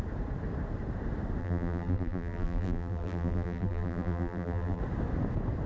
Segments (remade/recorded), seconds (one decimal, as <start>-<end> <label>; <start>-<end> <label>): 0.0-1.4 recorded; 1.4-4.8 remade; 4.8-5.7 recorded